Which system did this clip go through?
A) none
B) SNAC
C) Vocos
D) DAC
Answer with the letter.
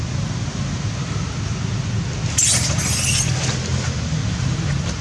A